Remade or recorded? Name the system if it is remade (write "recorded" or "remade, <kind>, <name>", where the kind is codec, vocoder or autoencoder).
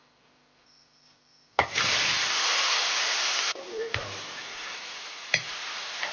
remade, vocoder, BigVGAN v2